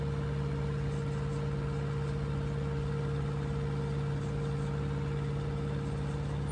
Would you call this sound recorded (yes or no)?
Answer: yes